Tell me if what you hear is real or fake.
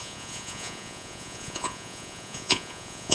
fake